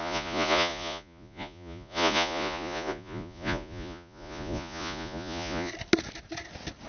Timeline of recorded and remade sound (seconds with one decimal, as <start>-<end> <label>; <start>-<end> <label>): 0.0-5.7 remade; 5.7-6.9 recorded